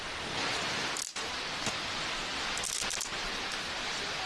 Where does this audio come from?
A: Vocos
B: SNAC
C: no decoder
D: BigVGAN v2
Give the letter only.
C